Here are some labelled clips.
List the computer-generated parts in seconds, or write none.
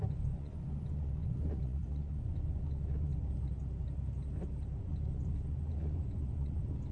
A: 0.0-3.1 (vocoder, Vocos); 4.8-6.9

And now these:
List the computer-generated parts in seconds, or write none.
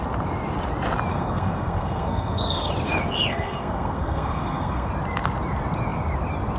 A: 1.1-2.7 (codec, SNAC); 3.3-4.9